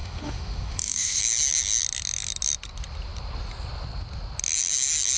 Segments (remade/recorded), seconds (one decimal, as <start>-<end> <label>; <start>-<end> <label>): 0.0-1.2 remade; 1.2-5.2 recorded